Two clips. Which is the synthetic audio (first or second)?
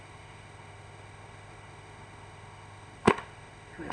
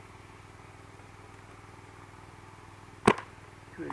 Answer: first